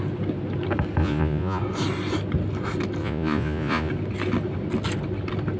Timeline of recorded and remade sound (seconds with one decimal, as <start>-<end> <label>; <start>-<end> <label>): 0.0-1.0 recorded; 1.0-1.6 remade; 1.6-3.0 recorded; 3.0-3.9 remade; 3.9-5.6 recorded